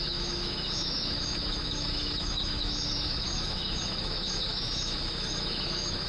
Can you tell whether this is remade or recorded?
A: remade